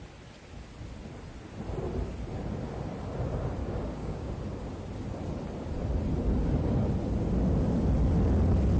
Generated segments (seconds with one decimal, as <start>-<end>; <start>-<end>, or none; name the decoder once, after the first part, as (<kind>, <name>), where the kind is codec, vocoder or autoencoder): 3.6-4.3 (codec, DAC)